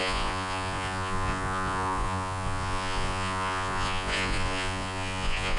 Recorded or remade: remade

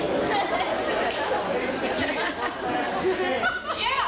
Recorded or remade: recorded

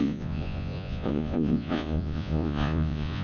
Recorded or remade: remade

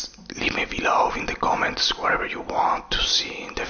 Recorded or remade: recorded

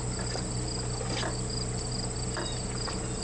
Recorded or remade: recorded